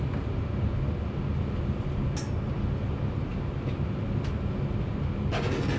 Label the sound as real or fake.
real